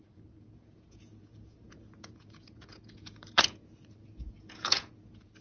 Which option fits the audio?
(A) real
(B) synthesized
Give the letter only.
B